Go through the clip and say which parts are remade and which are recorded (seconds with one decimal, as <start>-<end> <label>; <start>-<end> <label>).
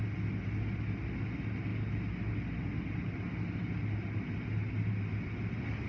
0.0-5.9 recorded